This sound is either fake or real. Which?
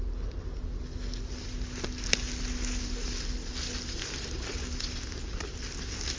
real